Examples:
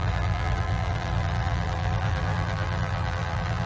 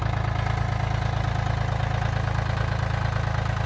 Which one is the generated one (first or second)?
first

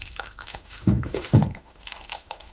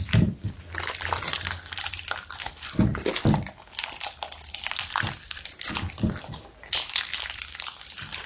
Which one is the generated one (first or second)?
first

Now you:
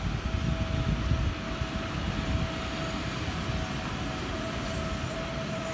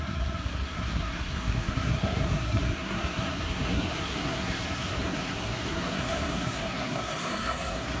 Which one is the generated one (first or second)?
second